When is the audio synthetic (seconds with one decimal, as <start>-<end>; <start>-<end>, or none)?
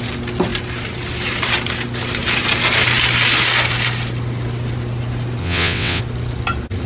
5.4-6.0